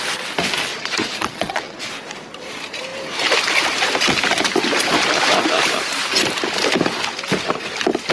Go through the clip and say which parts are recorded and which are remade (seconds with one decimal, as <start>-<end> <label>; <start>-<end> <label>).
0.0-0.7 recorded; 0.7-1.9 remade; 1.9-8.1 recorded